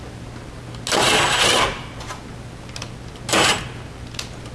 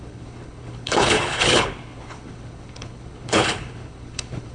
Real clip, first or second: first